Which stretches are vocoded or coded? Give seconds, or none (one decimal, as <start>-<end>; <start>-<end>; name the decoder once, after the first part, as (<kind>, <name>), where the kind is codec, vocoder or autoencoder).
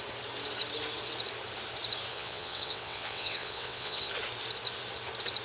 2.1-4.1 (vocoder, WaveNeXt)